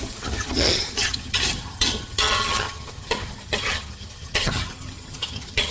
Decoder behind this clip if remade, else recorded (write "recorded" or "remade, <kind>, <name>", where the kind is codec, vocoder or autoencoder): remade, vocoder, HiFi-GAN